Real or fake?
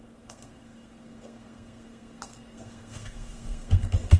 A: fake